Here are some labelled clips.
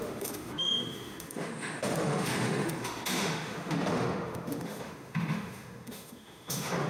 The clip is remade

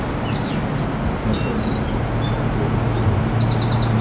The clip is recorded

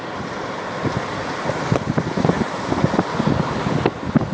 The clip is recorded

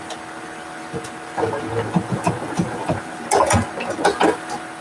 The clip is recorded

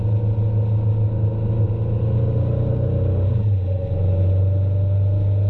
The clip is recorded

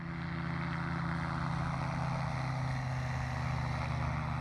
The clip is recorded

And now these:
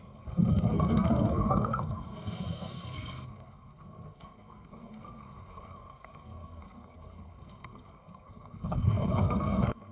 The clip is remade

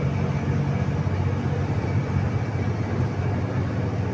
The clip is recorded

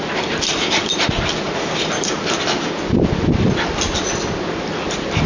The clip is recorded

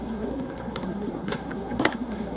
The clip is remade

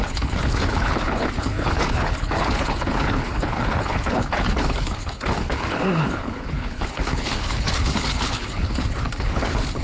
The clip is remade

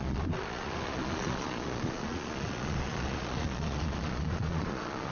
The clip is remade